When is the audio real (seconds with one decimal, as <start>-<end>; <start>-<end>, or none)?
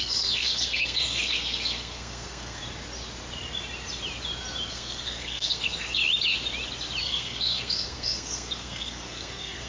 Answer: 2.6-4.7; 6.0-7.0